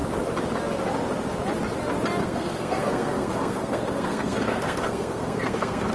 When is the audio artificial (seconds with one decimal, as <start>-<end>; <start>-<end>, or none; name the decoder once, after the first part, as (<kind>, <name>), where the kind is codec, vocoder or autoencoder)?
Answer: 2.2-5.9 (codec, SNAC)